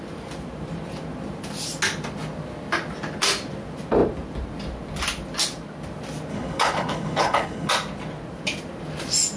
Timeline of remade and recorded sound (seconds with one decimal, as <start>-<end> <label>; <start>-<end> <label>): 0.0-6.3 recorded; 6.3-7.7 remade; 7.7-9.4 recorded